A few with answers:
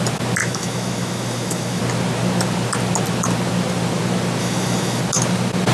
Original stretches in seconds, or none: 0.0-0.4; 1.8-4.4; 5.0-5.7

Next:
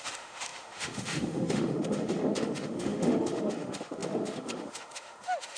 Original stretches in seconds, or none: none

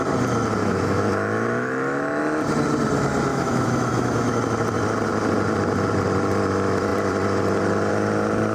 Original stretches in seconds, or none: 0.0-0.6; 2.2-3.3; 4.4-8.5